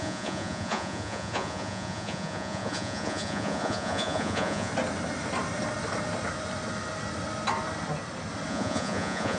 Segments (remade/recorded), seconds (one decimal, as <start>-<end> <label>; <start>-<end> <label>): 0.0-4.7 remade; 4.7-8.5 recorded; 8.5-9.4 remade